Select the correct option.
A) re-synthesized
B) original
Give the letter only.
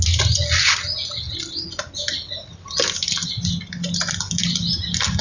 B